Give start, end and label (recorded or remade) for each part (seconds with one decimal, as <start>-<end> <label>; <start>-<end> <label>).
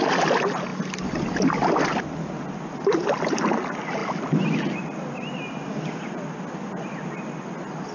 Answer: 0.0-7.9 recorded